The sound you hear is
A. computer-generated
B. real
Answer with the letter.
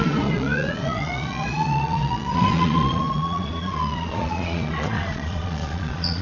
A